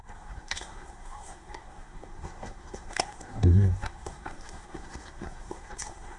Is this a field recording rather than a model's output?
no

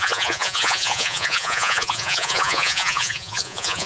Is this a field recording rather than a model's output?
no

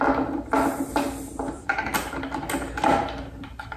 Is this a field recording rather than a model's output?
yes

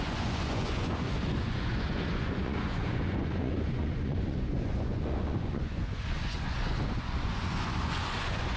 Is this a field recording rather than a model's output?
no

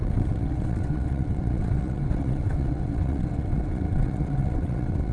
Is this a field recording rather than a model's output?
no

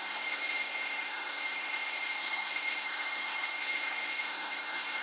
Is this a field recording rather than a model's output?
no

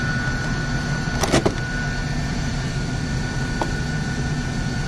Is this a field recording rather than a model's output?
yes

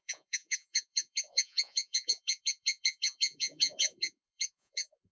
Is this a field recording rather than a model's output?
no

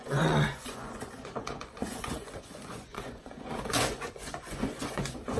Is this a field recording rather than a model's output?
no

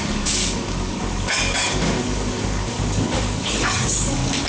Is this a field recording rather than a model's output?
no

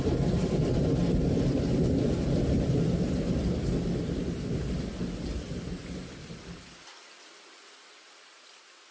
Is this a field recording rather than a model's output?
no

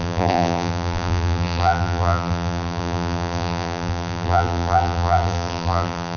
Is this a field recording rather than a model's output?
no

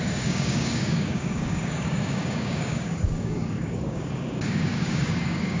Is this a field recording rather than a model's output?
no